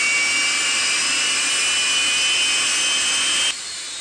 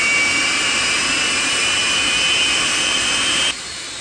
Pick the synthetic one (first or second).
second